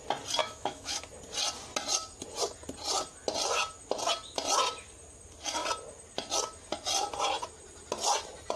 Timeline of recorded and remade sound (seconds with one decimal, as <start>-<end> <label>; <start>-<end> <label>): 0.0-0.4 recorded; 0.4-1.0 remade; 1.0-8.6 recorded